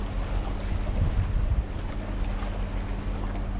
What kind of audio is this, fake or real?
real